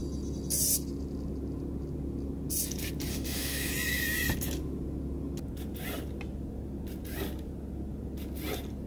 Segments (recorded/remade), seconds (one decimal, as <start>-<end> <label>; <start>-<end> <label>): 0.0-3.1 recorded; 3.1-3.7 remade; 3.7-8.9 recorded